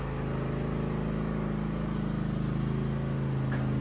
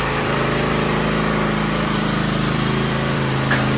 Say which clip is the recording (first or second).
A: first